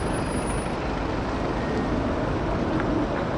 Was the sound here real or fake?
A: real